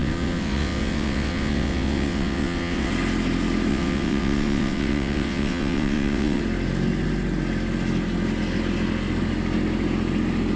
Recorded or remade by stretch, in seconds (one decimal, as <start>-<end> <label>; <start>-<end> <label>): 0.0-2.9 remade; 2.9-3.7 recorded; 3.7-6.4 remade; 6.4-10.6 recorded